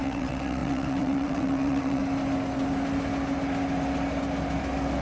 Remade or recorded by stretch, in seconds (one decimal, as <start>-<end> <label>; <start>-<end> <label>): 0.0-2.0 remade; 2.0-5.0 recorded